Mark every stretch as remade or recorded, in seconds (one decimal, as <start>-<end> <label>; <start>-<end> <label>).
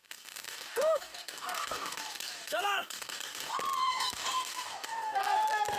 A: 0.0-3.5 remade; 3.5-3.9 recorded; 3.9-5.2 remade; 5.2-5.8 recorded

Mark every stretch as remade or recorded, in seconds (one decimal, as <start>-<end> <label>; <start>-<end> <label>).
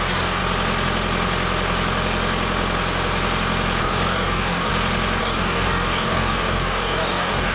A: 0.0-0.4 remade; 0.4-3.8 recorded; 3.8-4.7 remade; 4.7-5.2 recorded; 5.2-7.5 remade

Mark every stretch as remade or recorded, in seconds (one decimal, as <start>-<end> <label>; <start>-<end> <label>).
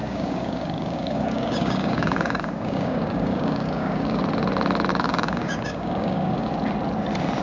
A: 0.0-4.2 remade; 4.2-4.9 recorded; 4.9-6.5 remade; 6.5-7.4 recorded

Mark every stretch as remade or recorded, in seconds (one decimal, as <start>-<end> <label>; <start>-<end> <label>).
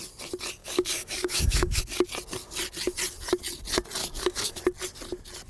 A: 0.0-0.6 recorded; 0.6-1.8 remade; 1.8-4.0 recorded; 4.0-4.6 remade; 4.6-5.5 recorded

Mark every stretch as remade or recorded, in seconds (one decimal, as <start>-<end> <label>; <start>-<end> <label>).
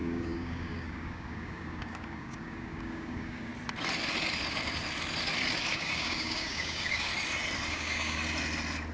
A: 0.0-3.5 remade; 3.5-5.7 recorded; 5.7-7.1 remade; 7.1-7.7 recorded; 7.7-8.2 remade; 8.2-8.9 recorded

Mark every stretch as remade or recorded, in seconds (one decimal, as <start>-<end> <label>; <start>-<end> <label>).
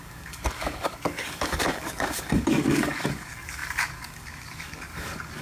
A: 0.0-5.4 remade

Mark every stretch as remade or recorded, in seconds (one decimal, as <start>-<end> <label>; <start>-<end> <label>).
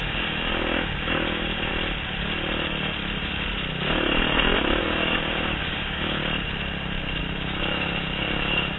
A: 0.0-1.7 remade; 1.7-4.8 recorded; 4.8-6.2 remade; 6.2-7.2 recorded; 7.2-8.8 remade